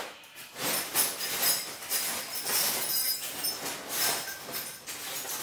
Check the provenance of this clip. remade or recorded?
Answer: recorded